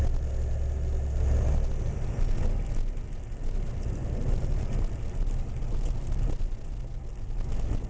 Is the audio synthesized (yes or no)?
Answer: no